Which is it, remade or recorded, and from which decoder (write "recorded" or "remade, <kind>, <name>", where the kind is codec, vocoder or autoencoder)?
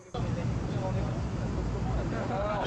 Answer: recorded